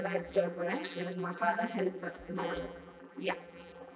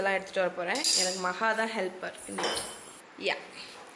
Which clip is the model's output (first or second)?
first